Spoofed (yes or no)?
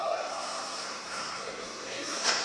yes